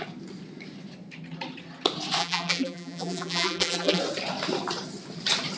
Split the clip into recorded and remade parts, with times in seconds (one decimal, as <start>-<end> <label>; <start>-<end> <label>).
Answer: 0.0-2.2 recorded; 2.2-4.0 remade; 4.0-5.6 recorded